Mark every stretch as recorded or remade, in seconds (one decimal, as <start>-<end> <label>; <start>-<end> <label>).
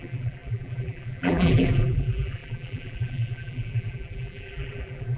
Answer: 0.0-5.2 remade